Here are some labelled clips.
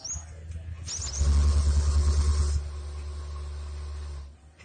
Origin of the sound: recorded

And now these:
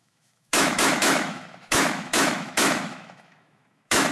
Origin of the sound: remade